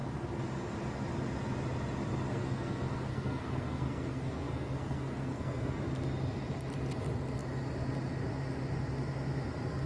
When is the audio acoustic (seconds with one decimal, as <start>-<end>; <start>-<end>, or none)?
0.0-2.3; 5.8-9.9